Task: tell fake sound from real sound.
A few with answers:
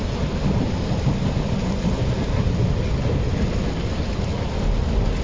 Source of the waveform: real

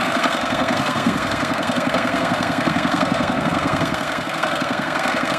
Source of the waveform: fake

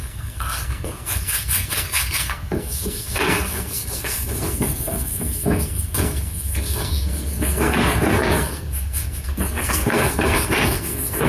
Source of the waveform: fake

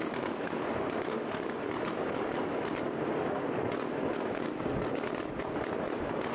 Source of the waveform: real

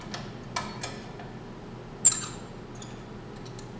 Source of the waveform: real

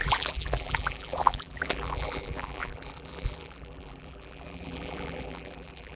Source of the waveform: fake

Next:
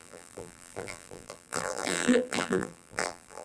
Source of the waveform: fake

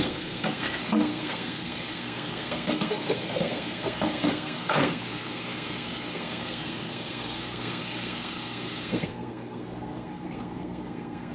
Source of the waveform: fake